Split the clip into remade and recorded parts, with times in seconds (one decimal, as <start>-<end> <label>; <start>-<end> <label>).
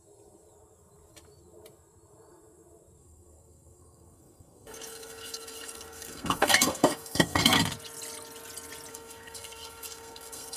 0.0-3.0 recorded; 3.0-7.6 remade; 7.6-8.9 recorded; 8.9-10.6 remade